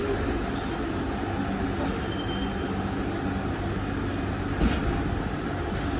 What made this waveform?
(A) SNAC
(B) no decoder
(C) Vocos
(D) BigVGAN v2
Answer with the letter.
B